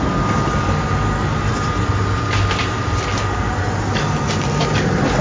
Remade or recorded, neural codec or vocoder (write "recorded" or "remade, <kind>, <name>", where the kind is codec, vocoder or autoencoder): recorded